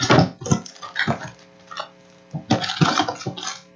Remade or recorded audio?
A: recorded